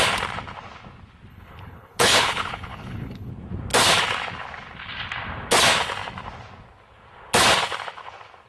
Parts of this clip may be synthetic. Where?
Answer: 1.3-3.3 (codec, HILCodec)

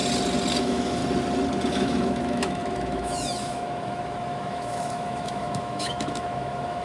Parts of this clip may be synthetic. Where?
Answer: 0.6-1.0 (autoencoder, DAC-VAE); 1.7-6.8

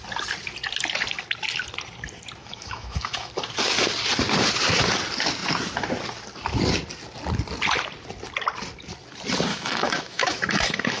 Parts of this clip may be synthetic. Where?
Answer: 2.4-3.3 (autoencoder, DAC-VAE); 9.5-11.0